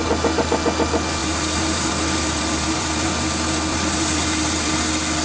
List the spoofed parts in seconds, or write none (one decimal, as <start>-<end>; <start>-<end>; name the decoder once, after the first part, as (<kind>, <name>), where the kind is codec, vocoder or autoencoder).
1.2-3.1 (vocoder, BigVGAN v2); 3.7-4.7